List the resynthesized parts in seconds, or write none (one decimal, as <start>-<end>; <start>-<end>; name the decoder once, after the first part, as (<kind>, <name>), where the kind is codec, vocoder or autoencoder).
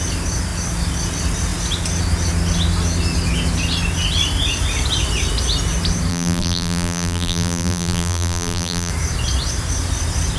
6.1-8.9 (vocoder, BigVGAN v2)